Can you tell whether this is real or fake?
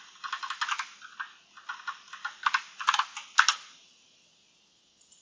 real